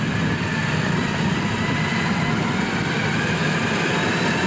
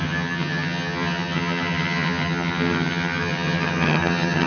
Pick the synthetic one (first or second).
second